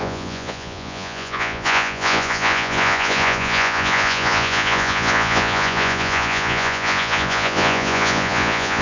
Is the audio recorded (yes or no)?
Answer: no